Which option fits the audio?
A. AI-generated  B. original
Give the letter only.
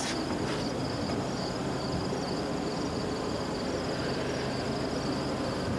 B